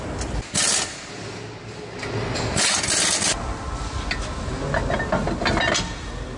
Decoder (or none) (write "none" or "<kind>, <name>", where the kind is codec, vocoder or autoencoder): none